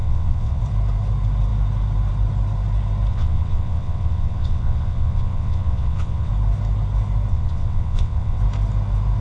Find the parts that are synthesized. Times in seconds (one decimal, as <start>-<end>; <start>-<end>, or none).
0.0-0.6; 3.1-6.3; 7.3-8.4

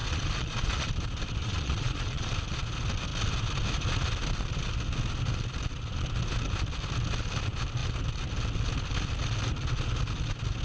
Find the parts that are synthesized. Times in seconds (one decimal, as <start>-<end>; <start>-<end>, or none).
0.0-0.9; 1.4-2.3

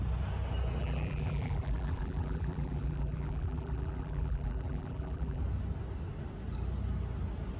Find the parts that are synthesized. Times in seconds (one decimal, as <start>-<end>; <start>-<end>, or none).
0.8-5.4